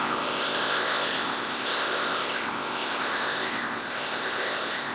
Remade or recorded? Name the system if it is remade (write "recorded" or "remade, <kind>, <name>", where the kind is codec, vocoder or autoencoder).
remade, codec, ZipCodec